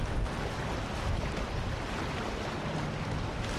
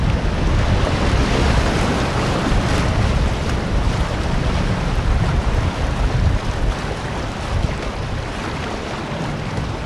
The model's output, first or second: second